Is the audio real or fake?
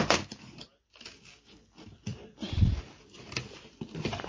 real